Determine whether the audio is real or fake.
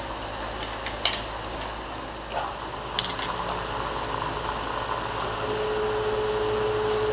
real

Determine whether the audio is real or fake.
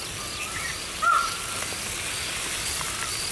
real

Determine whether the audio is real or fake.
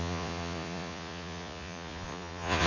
fake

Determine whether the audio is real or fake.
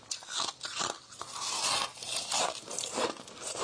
real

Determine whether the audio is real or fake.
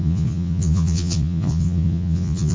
fake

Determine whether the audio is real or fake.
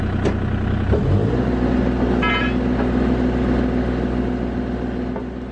real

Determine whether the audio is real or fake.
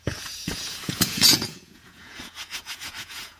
fake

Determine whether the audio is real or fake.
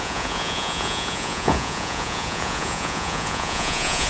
fake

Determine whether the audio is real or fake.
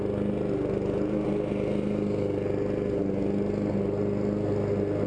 real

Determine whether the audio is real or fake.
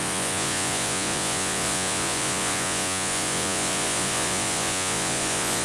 fake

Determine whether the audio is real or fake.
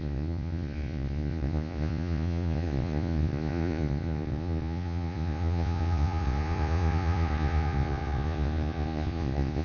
fake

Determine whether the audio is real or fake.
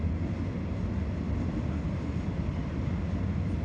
real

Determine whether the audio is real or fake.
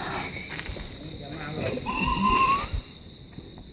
real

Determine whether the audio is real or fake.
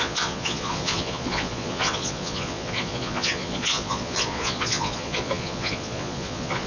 fake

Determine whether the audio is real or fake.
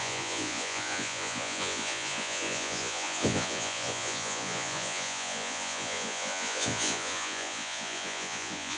fake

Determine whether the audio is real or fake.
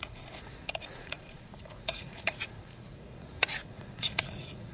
fake